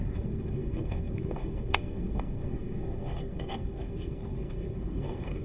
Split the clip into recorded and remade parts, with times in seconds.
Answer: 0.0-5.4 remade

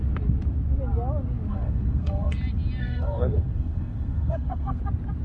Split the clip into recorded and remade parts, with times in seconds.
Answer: 0.0-1.5 recorded; 1.5-2.4 remade; 2.4-2.8 recorded; 2.8-4.8 remade; 4.8-5.2 recorded

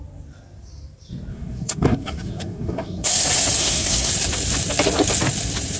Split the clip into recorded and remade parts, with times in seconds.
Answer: 0.0-1.3 recorded; 1.3-3.1 remade; 3.1-3.6 recorded; 3.6-4.1 remade; 4.1-5.8 recorded

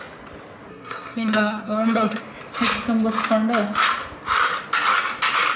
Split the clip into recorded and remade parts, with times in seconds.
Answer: 0.0-0.7 recorded; 0.7-2.2 remade; 2.2-5.6 recorded